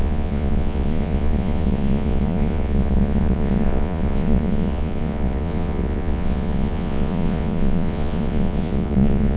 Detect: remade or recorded remade